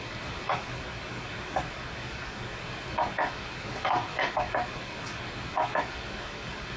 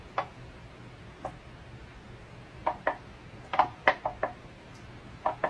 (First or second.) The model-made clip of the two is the first